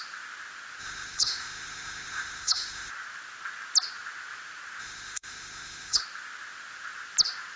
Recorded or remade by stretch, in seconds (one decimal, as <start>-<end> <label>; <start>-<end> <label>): 0.0-0.8 recorded; 0.8-2.9 remade; 2.9-4.8 recorded; 4.8-6.0 remade; 6.0-7.6 recorded